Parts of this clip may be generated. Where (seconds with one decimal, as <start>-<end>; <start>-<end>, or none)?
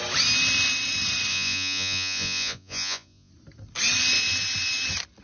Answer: 1.3-3.3